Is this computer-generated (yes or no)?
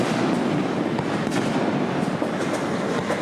no